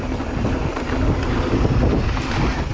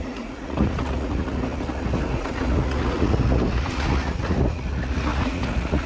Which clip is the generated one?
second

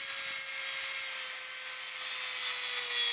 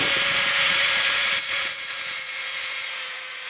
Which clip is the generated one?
second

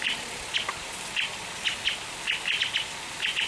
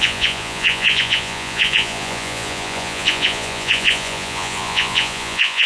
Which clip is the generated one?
second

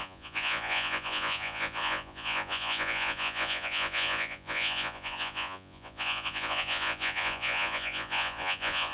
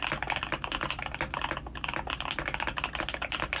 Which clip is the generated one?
first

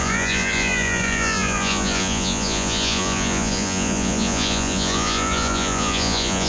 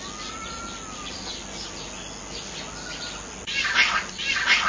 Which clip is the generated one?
first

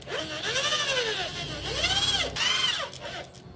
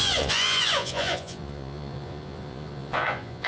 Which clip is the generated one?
second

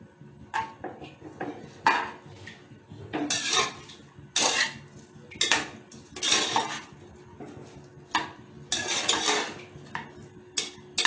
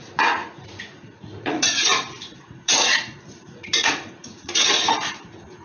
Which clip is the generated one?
second